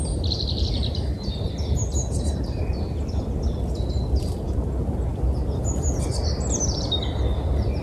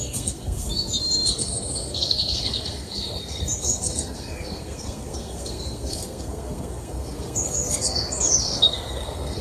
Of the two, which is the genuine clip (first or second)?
first